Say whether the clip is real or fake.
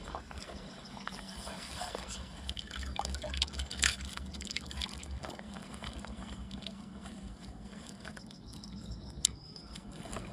fake